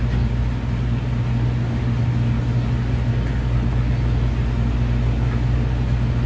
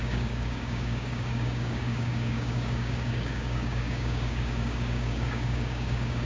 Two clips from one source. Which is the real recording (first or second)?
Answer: first